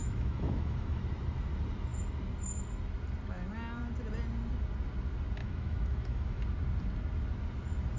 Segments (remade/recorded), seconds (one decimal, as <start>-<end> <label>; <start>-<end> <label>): 0.0-1.0 remade; 1.0-5.4 recorded; 5.4-6.4 remade; 6.4-8.0 recorded